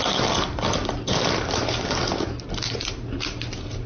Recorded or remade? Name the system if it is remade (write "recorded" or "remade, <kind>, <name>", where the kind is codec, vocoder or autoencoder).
recorded